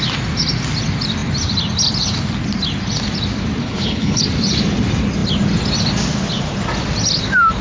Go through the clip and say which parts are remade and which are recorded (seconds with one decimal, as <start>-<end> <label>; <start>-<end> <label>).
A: 0.0-3.6 recorded; 3.6-4.2 remade; 4.2-7.6 recorded